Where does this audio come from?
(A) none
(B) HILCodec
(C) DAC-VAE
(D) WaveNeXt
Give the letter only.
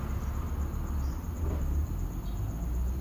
A